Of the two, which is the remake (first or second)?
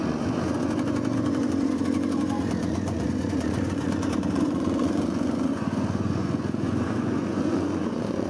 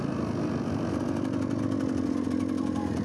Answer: first